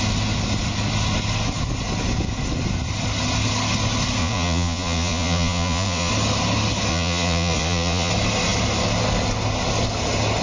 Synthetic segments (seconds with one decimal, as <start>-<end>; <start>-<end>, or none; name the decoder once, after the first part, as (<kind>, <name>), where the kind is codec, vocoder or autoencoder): 4.2-6.1 (vocoder, Vocos); 6.9-8.1

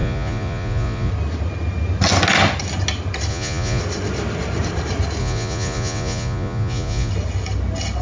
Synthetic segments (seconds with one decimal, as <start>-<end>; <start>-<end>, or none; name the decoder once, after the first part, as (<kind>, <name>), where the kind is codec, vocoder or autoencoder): 0.0-1.1 (vocoder, Vocos); 3.3-3.8; 5.2-7.1

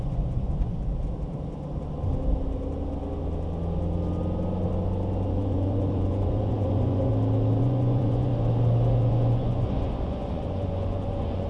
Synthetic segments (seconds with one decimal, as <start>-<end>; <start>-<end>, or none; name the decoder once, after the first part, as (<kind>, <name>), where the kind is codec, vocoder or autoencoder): 0.0-0.7 (vocoder, Vocos); 5.3-7.1; 7.6-8.3; 9.0-11.5

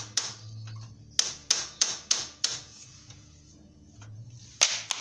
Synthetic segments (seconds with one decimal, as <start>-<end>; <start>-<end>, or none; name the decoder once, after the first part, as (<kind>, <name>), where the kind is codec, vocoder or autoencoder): 1.4-4.3 (vocoder, Vocos)

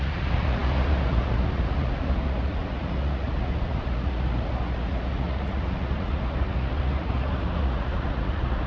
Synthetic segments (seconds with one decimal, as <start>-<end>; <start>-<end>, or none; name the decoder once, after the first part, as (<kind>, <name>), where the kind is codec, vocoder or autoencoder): 0.0-8.7 (vocoder, Vocos)

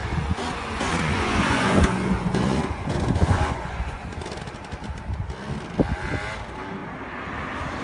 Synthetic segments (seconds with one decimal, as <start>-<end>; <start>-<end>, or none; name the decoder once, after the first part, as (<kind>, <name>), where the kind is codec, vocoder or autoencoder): 0.0-4.2 (vocoder, Vocos)

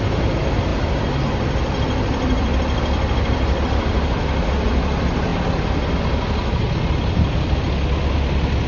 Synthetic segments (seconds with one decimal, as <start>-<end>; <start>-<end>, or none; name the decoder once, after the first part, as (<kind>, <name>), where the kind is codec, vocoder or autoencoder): none

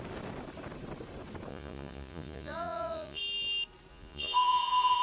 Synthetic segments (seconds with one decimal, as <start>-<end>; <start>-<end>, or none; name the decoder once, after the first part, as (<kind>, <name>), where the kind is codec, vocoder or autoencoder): 1.5-3.2 (vocoder, Vocos); 3.9-5.0